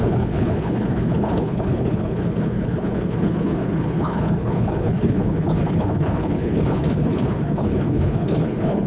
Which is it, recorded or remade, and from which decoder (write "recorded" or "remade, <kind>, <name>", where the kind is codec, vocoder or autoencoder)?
remade, codec, HILCodec